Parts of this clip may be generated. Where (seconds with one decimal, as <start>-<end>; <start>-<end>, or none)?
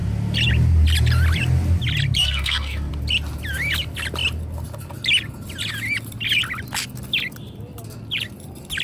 2.2-2.9